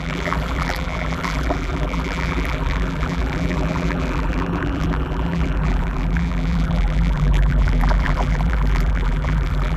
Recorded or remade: remade